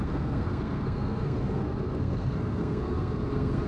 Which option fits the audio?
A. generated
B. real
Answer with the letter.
A